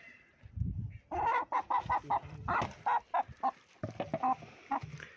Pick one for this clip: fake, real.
real